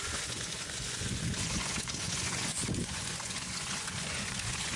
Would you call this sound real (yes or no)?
no